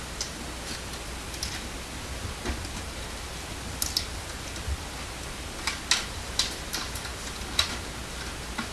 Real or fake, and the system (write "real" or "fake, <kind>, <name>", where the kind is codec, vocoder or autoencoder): real